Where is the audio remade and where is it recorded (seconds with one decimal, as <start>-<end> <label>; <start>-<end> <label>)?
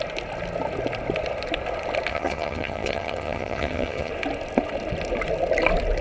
0.0-2.1 recorded; 2.1-4.1 remade; 4.1-6.0 recorded